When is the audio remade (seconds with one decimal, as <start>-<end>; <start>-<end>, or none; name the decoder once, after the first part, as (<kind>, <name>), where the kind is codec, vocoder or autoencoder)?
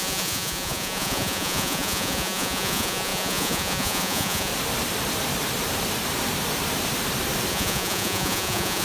0.0-4.5 (vocoder, Vocos); 7.5-8.8